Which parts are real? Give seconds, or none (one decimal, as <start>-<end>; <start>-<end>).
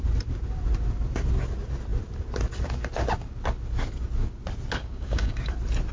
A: 0.0-4.8; 5.5-5.9